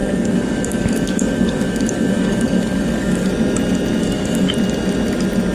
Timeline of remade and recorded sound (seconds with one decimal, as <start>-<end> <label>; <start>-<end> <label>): 0.0-3.3 remade; 3.3-4.0 recorded; 4.0-4.5 remade; 4.5-5.5 recorded